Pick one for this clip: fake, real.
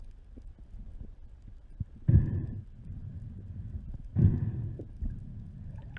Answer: real